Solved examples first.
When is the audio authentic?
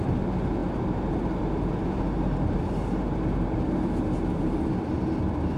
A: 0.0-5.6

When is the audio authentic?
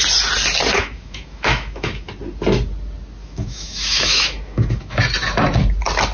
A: 0.0-0.7; 2.1-3.2; 5.0-6.1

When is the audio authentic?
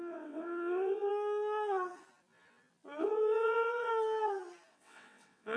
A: 1.1-3.0; 3.9-4.7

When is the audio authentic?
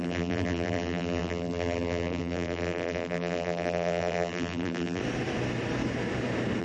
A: 5.0-6.6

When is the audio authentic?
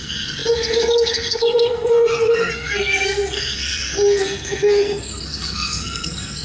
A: none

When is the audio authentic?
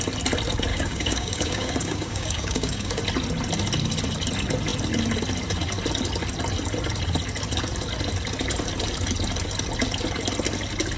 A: 0.0-0.7; 3.0-11.0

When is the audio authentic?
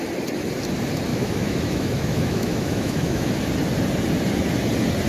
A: 0.0-1.1; 3.4-5.1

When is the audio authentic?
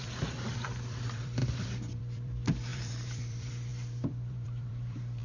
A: none